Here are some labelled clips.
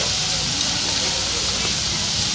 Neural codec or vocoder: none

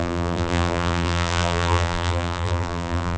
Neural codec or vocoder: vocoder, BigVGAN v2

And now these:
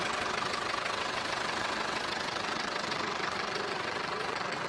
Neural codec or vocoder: vocoder, WaveNeXt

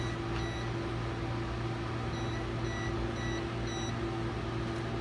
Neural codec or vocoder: none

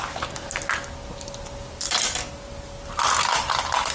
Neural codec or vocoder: none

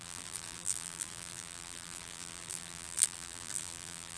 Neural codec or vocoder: vocoder, BigVGAN v2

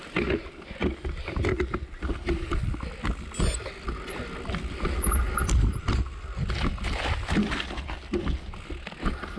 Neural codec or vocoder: none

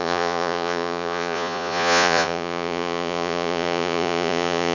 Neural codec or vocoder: vocoder, Vocos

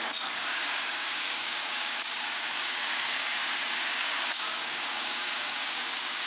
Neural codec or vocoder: codec, DAC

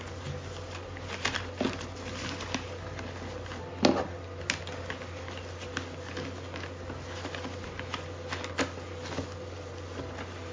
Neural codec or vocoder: none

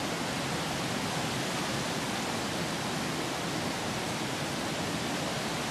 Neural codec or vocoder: none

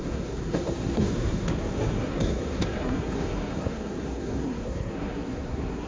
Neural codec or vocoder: codec, SNAC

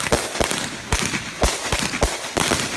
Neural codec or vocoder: none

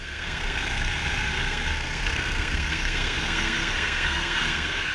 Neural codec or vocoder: codec, SNAC